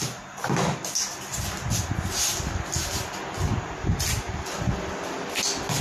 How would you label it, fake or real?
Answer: real